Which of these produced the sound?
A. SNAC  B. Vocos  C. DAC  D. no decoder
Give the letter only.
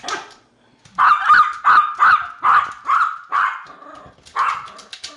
D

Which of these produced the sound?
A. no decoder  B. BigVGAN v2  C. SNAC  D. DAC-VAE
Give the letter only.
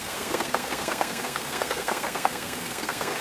C